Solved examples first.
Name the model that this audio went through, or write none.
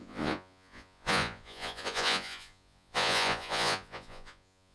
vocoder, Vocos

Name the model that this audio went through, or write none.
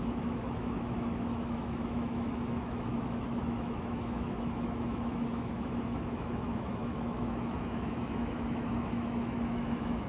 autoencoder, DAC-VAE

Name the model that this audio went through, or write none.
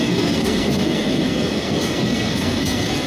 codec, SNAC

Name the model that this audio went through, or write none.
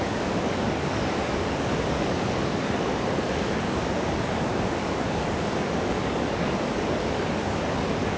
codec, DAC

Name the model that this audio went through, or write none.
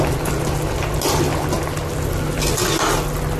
none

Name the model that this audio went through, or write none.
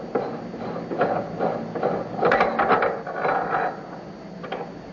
none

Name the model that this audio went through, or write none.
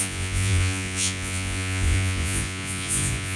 vocoder, Vocos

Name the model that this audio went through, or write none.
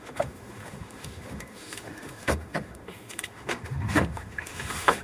autoencoder, DAC-VAE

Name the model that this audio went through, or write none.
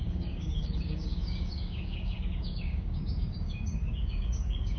codec, DAC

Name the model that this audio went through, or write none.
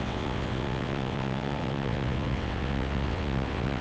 vocoder, WaveNeXt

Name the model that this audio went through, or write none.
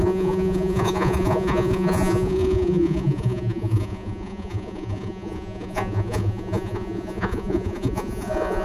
vocoder, Vocos